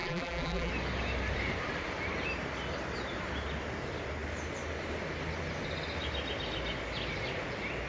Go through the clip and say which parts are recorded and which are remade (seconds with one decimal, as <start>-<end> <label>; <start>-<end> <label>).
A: 0.0-0.7 remade; 0.7-7.9 recorded